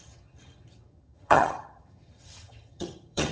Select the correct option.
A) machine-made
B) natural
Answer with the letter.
A